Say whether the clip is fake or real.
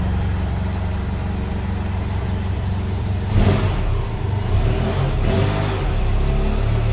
real